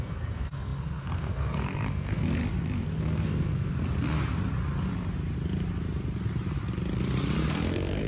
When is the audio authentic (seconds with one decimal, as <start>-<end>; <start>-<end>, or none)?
2.4-3.0; 3.7-7.5